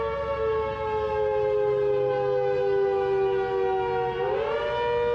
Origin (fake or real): real